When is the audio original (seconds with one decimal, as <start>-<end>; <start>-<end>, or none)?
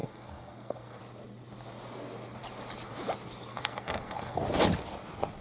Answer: 1.0-3.5; 4.4-5.4